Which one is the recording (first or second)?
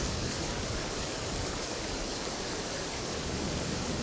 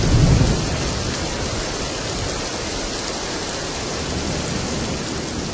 second